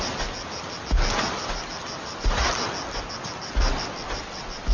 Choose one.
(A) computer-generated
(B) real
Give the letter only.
B